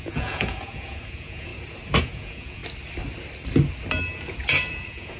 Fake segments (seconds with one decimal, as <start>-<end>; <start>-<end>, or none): 0.0-1.5; 2.0-2.6; 4.7-5.2